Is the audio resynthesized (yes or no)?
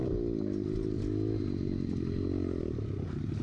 no